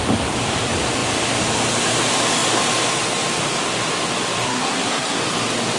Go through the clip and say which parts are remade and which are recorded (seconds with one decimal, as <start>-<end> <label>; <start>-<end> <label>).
0.0-4.4 recorded; 4.4-5.2 remade; 5.2-5.8 recorded